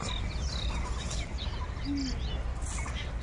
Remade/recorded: recorded